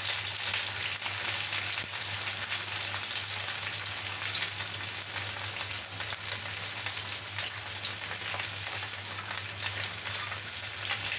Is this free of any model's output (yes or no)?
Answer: yes